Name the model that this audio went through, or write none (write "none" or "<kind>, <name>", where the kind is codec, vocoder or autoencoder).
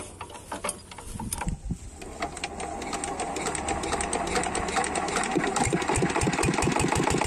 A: none